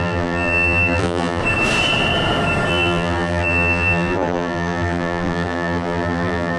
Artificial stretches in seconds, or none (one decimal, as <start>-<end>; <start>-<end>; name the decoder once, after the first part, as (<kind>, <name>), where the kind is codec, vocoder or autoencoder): 0.0-1.4 (vocoder, BigVGAN v2); 2.7-6.6